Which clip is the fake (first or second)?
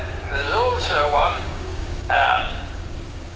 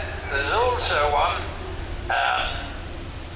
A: first